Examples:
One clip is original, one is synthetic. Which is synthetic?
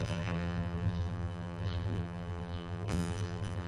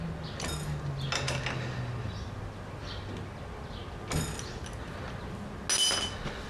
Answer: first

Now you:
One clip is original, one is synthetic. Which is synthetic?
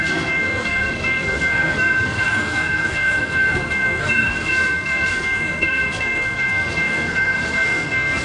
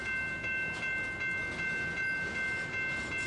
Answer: first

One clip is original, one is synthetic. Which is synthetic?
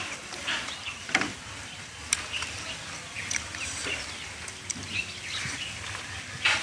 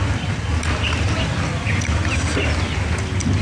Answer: first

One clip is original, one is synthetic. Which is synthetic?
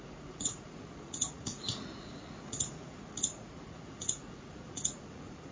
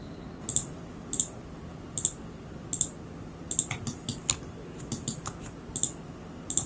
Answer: first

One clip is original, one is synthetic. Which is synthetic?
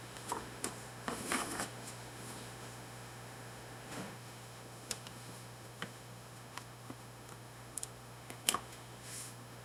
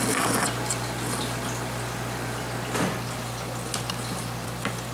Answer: first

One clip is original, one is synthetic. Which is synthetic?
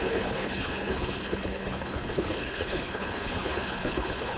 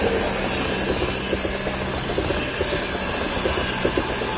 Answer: first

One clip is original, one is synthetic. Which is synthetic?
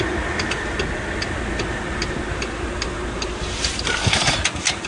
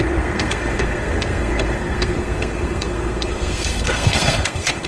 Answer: second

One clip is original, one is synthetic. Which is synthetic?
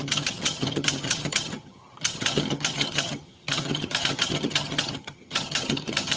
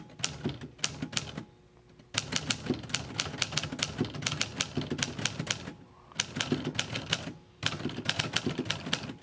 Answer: first